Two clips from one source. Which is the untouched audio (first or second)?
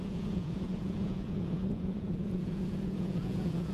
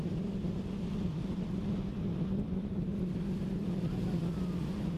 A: second